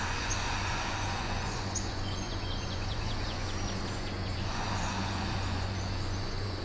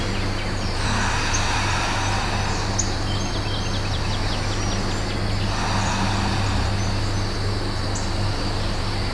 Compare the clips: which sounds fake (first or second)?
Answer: first